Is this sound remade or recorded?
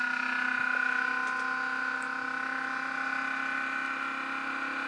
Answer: recorded